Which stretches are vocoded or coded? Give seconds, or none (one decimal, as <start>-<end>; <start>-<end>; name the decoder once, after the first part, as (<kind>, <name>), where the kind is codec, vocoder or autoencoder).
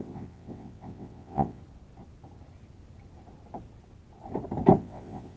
0.0-1.6 (vocoder, WaveNeXt); 4.8-5.4